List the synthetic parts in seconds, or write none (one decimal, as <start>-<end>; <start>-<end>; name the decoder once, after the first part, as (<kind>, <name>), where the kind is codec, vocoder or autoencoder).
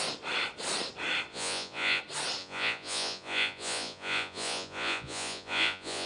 1.3-2.0 (vocoder, Vocos); 2.4-6.1